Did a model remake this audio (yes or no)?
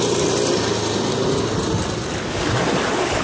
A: no